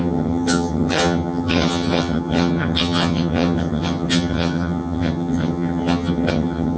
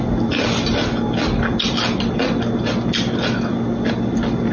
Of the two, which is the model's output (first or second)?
first